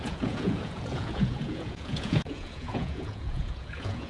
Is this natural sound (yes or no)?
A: no